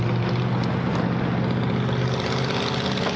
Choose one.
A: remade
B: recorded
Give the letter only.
B